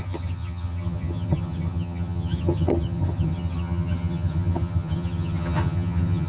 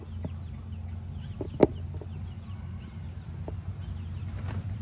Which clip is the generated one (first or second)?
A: first